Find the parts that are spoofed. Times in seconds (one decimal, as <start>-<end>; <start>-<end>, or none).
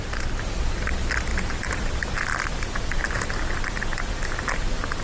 none